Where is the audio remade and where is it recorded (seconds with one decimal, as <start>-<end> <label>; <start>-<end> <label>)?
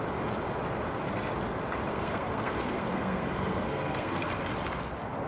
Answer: 0.0-1.9 recorded; 1.9-4.3 remade; 4.3-5.3 recorded